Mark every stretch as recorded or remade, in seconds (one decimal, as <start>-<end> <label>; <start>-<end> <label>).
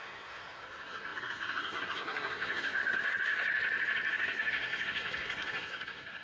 0.0-3.5 remade; 3.5-4.1 recorded; 4.1-6.2 remade